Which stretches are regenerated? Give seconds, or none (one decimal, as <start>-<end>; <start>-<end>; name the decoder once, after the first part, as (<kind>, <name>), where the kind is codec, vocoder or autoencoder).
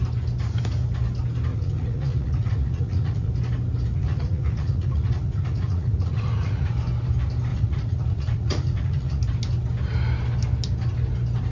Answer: 1.5-3.3 (vocoder, Vocos); 3.9-6.7; 7.5-9.2